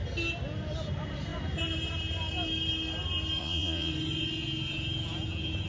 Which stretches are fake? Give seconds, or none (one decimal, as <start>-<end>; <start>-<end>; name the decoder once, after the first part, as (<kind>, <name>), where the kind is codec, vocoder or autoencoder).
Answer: 3.4-3.9 (vocoder, Vocos)

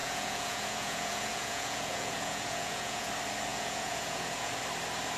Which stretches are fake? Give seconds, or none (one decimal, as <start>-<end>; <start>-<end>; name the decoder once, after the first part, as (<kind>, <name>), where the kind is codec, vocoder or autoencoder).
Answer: 0.0-3.1 (vocoder, Vocos); 3.5-4.5